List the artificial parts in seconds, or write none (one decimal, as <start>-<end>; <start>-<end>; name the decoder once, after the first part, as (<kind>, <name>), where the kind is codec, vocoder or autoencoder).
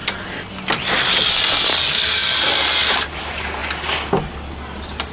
none